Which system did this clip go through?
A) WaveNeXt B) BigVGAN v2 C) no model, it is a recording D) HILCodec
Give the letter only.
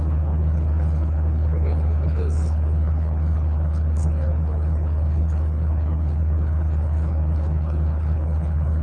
D